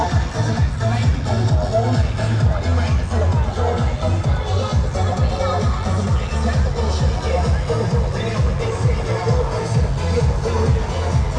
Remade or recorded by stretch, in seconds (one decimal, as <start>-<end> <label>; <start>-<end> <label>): 0.0-11.4 recorded